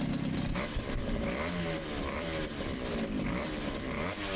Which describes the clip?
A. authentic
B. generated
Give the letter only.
A